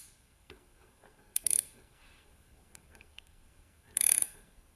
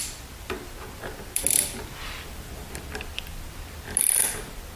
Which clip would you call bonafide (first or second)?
second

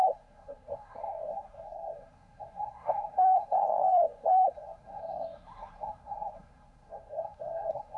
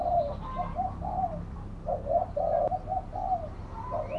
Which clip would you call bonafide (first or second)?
second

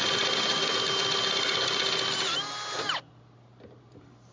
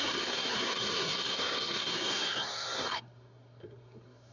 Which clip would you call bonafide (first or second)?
first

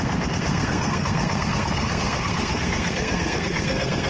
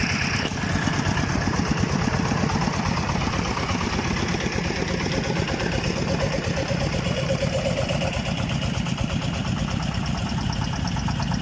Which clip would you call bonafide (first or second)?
second